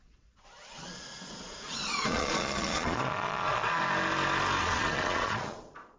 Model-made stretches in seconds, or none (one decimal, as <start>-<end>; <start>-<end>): 0.0-3.8; 4.6-6.0